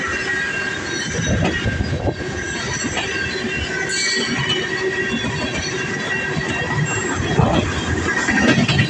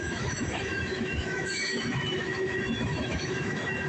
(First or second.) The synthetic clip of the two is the second